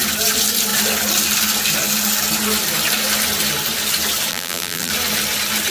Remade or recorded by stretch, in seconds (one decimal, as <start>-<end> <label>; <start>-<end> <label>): 0.0-4.3 recorded; 4.3-4.9 remade; 4.9-5.7 recorded